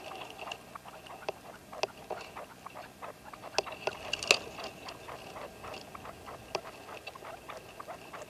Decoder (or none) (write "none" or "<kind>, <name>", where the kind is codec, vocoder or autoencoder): none